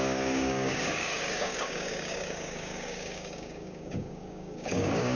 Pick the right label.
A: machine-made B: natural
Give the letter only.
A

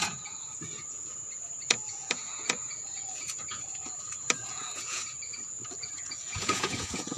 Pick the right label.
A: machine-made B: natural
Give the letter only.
A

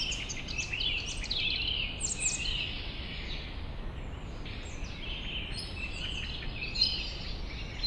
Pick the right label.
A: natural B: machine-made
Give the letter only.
A